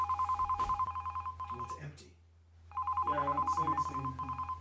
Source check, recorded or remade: recorded